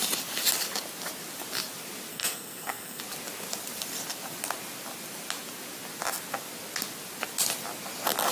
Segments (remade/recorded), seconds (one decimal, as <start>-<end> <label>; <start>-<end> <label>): 0.0-2.1 recorded; 2.1-3.0 remade; 3.0-8.3 recorded